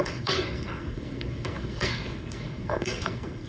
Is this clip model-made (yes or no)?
yes